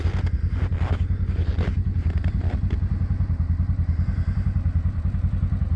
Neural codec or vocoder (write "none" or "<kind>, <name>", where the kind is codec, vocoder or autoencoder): none